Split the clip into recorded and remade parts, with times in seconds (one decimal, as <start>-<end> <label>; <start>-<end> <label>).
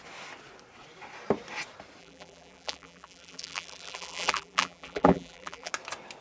0.0-2.0 recorded; 2.0-5.7 remade; 5.7-6.2 recorded